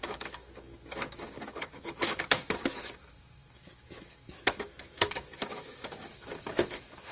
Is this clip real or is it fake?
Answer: fake